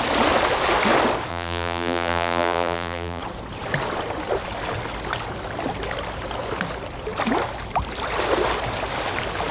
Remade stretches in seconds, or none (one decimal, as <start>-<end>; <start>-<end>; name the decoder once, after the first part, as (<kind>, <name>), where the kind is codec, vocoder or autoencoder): 1.3-3.2 (vocoder, BigVGAN v2)